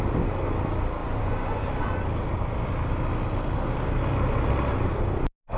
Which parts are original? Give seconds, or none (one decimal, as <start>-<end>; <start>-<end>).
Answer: 0.0-1.0; 1.7-5.6